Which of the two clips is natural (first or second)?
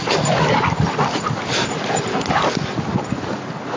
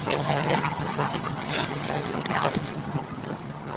first